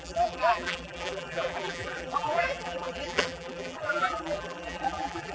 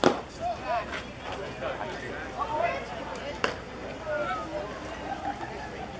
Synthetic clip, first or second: first